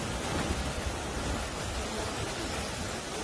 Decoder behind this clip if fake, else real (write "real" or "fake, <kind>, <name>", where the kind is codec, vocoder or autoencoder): real